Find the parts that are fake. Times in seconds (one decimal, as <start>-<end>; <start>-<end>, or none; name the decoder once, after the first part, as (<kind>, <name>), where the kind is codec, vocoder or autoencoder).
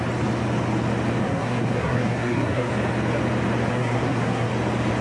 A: 1.2-2.7 (codec, SNAC); 3.7-4.5